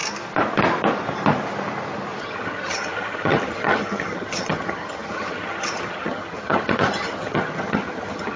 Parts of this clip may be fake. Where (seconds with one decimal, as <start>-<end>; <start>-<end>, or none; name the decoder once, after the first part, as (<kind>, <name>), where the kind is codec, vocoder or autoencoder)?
2.2-8.4 (vocoder, HiFi-GAN)